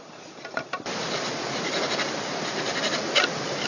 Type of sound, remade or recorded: recorded